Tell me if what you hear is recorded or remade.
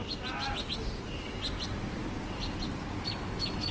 recorded